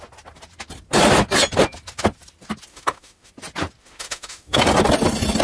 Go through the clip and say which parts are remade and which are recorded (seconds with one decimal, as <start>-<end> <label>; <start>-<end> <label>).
0.0-2.7 recorded; 2.7-3.3 remade; 3.3-3.8 recorded; 3.8-4.6 remade; 4.6-5.4 recorded